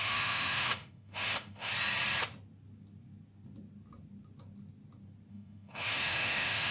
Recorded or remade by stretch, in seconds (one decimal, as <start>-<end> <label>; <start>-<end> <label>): 0.0-1.7 remade; 1.7-5.3 recorded; 5.3-6.7 remade

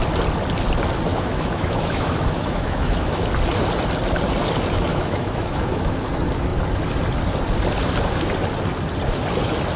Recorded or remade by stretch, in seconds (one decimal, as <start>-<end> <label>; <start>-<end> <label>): 0.0-1.1 recorded; 1.1-3.3 remade; 3.3-4.9 recorded; 4.9-6.0 remade; 6.0-9.8 recorded

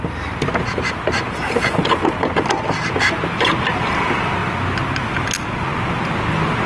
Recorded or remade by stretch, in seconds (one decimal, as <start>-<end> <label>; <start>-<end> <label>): 0.0-6.7 recorded

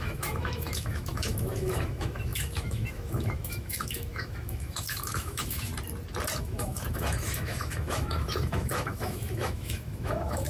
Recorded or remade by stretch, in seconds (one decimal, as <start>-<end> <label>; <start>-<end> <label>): 0.0-5.7 remade; 5.7-6.4 recorded; 6.4-10.5 remade

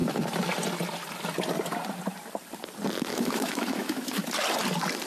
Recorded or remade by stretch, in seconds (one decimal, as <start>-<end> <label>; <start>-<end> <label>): 0.0-3.1 recorded; 3.1-4.3 remade; 4.3-5.1 recorded

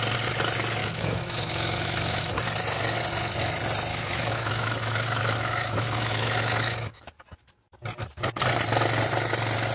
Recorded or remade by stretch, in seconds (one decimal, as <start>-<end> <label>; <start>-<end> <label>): 0.0-0.8 recorded; 0.8-2.3 remade; 2.3-3.9 recorded; 3.9-7.2 remade; 7.2-9.7 recorded